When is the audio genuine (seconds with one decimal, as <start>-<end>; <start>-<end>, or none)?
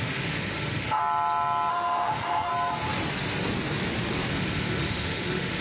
1.0-1.7; 2.5-4.3